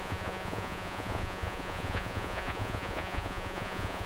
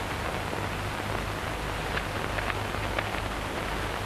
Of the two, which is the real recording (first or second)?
second